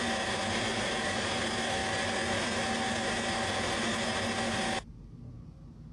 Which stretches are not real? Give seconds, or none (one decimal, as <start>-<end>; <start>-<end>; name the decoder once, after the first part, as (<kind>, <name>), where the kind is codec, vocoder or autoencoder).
none